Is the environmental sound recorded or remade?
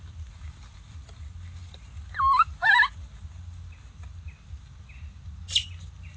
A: recorded